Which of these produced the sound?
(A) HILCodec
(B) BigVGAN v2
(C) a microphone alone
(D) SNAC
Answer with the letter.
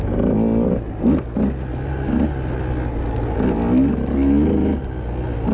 C